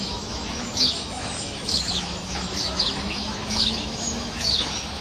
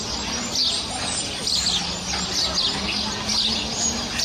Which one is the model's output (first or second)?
first